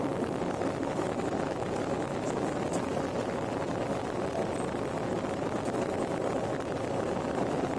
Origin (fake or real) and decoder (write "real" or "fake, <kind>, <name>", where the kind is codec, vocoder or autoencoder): real